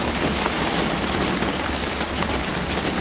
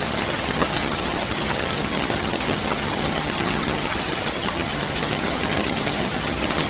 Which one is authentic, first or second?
first